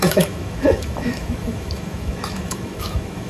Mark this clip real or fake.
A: fake